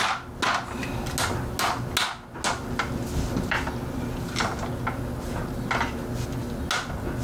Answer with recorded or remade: recorded